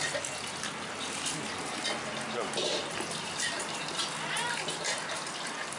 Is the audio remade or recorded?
recorded